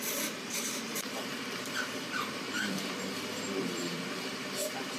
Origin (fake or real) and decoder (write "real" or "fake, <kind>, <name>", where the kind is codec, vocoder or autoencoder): fake, vocoder, BigVGAN v2